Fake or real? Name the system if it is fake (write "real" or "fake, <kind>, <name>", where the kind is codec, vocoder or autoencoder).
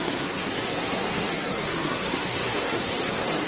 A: fake, codec, SNAC